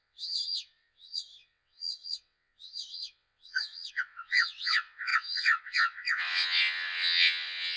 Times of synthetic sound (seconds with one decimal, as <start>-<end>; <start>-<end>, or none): 0.0-7.8